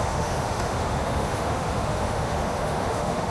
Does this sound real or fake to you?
fake